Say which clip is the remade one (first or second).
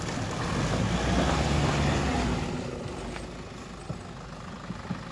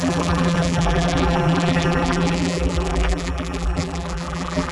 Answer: second